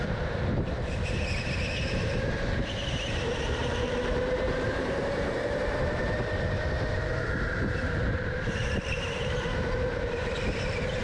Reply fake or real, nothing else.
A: fake